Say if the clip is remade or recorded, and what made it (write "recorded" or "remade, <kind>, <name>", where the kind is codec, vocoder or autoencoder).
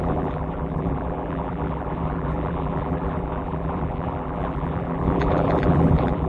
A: remade, vocoder, BigVGAN v2